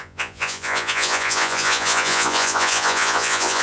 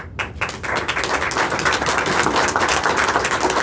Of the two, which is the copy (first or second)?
first